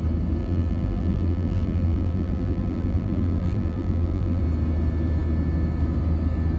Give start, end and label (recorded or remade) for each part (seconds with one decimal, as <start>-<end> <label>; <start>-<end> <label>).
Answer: 0.0-0.4 recorded; 0.4-4.4 remade; 4.4-6.6 recorded